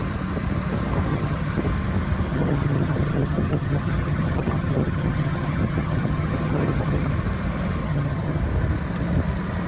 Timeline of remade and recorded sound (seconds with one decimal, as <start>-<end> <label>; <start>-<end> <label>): 0.0-1.1 recorded; 1.1-1.6 remade; 1.6-2.3 recorded; 2.3-7.1 remade; 7.1-7.8 recorded; 7.8-8.4 remade; 8.4-9.7 recorded